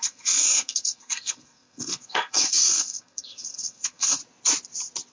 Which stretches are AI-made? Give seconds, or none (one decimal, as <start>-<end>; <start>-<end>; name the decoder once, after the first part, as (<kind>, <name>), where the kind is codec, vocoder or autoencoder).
0.0-4.2 (codec, SNAC)